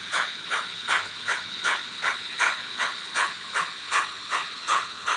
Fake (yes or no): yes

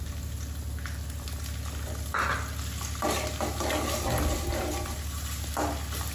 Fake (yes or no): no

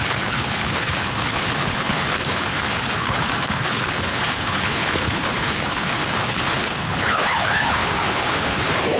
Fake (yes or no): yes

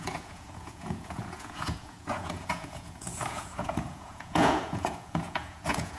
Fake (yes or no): yes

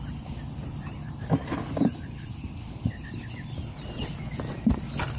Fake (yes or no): no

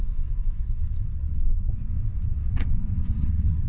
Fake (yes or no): yes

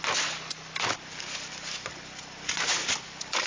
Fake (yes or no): no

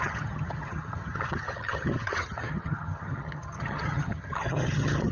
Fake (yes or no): yes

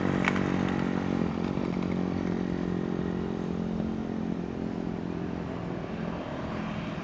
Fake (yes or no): no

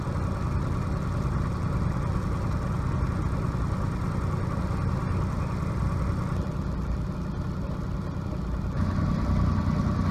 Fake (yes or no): no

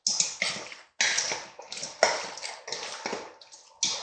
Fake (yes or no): no